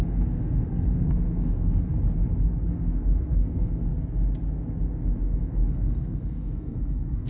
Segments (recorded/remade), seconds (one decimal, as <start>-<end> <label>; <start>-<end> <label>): 0.0-1.9 remade; 1.9-2.7 recorded; 2.7-3.9 remade; 3.9-5.4 recorded; 5.4-7.3 remade